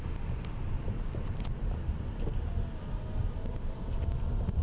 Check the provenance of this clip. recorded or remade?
recorded